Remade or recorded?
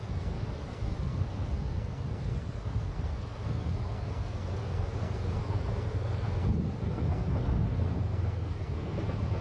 remade